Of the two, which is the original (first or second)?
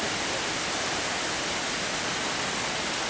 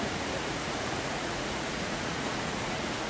first